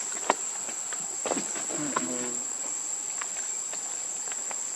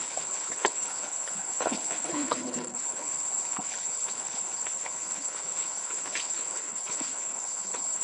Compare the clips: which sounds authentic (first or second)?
first